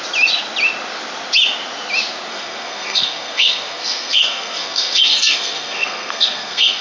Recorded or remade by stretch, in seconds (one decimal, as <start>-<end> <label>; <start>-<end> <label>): 0.0-2.3 recorded; 2.3-6.8 remade

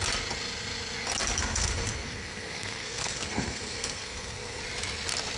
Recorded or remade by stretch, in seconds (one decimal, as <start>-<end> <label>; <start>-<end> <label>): 0.0-1.4 recorded; 1.4-4.6 remade; 4.6-5.4 recorded

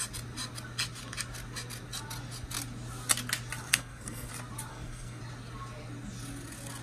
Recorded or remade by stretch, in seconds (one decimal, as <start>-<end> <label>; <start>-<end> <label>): 0.0-3.7 recorded; 3.7-4.3 remade; 4.3-4.7 recorded; 4.7-5.2 remade; 5.2-6.8 recorded

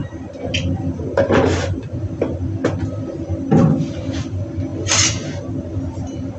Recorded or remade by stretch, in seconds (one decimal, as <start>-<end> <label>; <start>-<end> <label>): 0.0-6.4 recorded